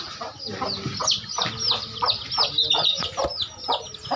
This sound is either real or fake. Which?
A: real